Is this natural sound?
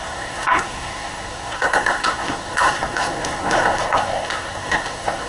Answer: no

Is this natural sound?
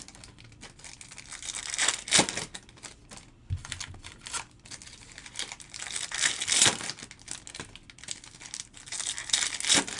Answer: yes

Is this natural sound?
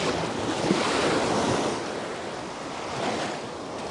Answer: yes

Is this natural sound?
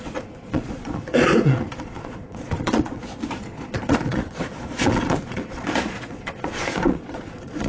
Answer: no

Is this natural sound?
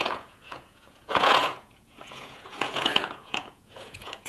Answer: no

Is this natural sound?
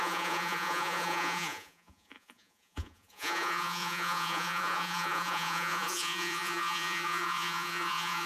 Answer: no